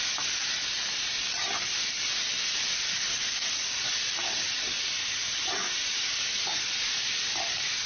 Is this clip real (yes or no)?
yes